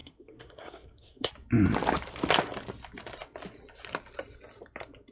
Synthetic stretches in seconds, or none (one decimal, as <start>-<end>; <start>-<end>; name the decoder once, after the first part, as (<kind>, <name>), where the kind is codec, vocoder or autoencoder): 0.0-1.3 (codec, SNAC)